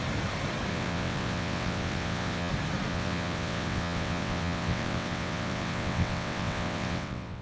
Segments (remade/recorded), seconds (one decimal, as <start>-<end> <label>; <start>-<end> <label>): 0.0-0.7 recorded; 0.7-2.5 remade; 2.5-2.9 recorded; 2.9-7.4 remade